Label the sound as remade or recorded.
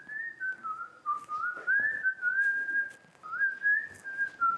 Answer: recorded